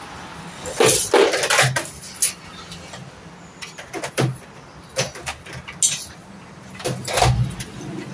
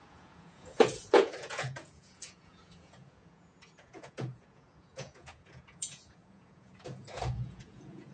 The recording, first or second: first